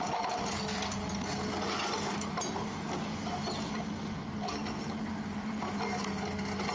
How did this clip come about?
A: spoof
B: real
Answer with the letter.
B